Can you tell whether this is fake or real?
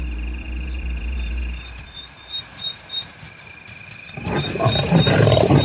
fake